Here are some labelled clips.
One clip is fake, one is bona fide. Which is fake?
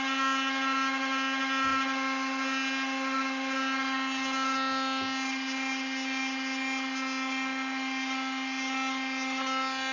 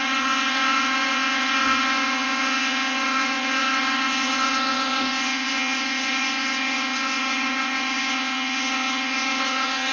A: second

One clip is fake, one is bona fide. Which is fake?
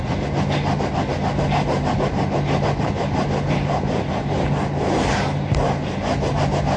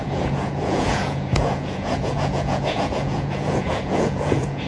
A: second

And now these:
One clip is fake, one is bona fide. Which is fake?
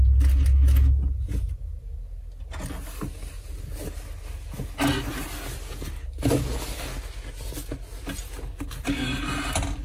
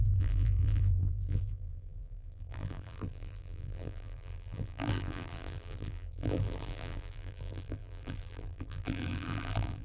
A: second